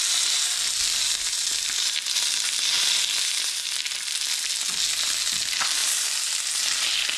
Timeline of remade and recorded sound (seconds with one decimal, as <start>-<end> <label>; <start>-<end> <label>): 0.0-5.8 recorded; 5.8-6.5 remade; 6.5-7.2 recorded